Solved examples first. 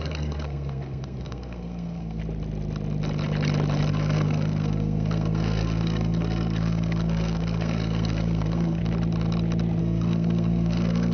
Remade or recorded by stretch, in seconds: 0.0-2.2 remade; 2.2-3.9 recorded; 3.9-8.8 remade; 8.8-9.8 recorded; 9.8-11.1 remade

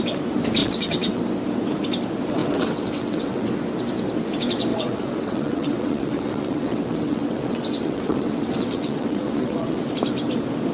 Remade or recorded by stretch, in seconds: 0.0-0.6 recorded; 0.6-1.2 remade; 1.2-2.4 recorded; 2.4-3.5 remade; 3.5-4.7 recorded; 4.7-9.9 remade; 9.9-10.7 recorded

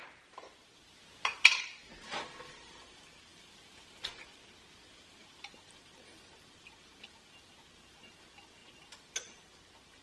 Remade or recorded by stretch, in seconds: 0.0-0.7 remade; 0.7-1.8 recorded; 1.8-2.8 remade; 2.8-10.0 recorded

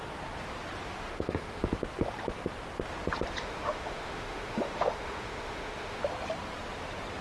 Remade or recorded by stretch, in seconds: 0.0-1.1 recorded; 1.1-1.7 remade; 1.7-3.4 recorded; 3.4-6.0 remade; 6.0-7.2 recorded

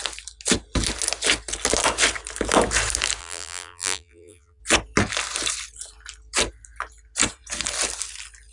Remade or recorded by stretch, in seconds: 0.0-3.2 recorded; 3.2-4.6 remade; 4.6-8.5 recorded